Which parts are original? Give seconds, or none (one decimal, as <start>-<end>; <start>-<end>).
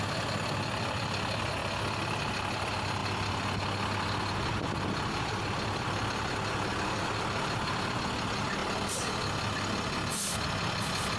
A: 0.0-11.2